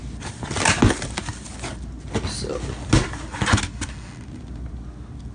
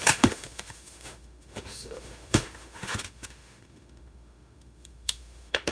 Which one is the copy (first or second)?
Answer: second